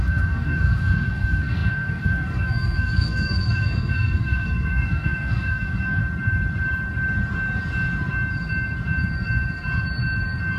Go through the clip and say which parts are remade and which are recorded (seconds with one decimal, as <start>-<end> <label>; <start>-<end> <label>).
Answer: 0.0-6.0 remade; 6.0-10.6 recorded